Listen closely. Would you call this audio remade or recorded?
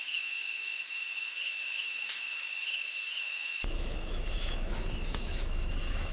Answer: remade